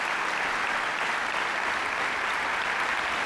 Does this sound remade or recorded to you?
recorded